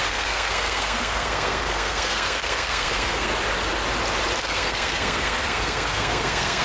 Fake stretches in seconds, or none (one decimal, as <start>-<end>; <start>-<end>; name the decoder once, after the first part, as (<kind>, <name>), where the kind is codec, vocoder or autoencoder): 0.0-3.3 (codec, SNAC); 4.4-6.6